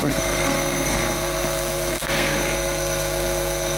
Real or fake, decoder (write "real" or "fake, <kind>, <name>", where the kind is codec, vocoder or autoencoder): fake, codec, SNAC